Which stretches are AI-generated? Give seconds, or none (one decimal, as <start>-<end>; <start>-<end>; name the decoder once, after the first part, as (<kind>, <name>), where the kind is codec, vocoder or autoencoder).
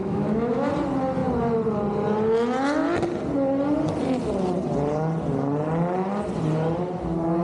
0.0-0.7 (autoencoder, DAC-VAE)